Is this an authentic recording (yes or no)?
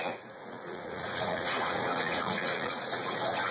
no